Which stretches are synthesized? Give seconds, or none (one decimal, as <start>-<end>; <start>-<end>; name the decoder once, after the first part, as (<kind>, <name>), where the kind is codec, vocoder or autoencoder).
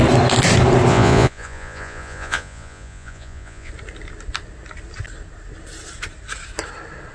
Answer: 0.9-3.7 (vocoder, Vocos)